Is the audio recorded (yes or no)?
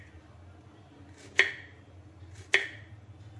yes